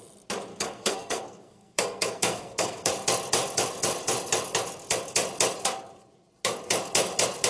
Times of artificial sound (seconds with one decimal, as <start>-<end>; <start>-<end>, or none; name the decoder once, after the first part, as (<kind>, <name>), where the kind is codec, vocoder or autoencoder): 0.5-2.9 (codec, SNAC)